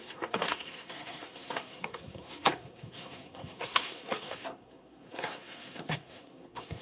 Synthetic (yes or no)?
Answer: yes